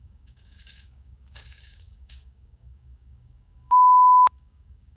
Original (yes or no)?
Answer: no